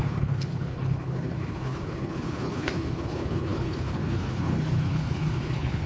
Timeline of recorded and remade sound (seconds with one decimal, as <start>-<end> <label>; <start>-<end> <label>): 0.0-5.9 remade

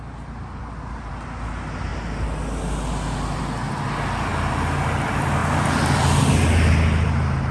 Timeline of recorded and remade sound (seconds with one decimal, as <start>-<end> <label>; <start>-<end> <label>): 0.0-7.5 recorded

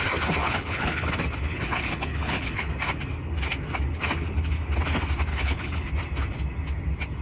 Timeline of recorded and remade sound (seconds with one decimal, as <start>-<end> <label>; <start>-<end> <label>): 0.0-0.4 recorded; 0.4-1.1 remade; 1.1-1.5 recorded; 1.5-2.7 remade; 2.7-5.3 recorded; 5.3-5.9 remade; 5.9-7.2 recorded

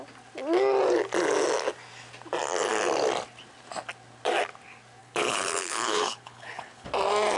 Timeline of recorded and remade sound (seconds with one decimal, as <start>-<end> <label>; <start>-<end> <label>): 0.0-5.0 recorded; 5.0-6.9 remade; 6.9-7.4 recorded